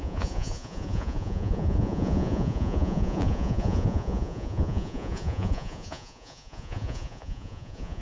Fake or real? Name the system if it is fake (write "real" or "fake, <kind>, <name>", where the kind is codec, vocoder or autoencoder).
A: fake, vocoder, Vocos